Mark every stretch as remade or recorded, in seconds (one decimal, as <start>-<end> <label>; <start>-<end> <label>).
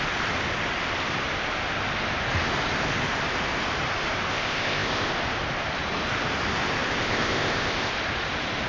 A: 0.0-4.3 recorded; 4.3-5.1 remade; 5.1-7.0 recorded; 7.0-7.9 remade; 7.9-8.7 recorded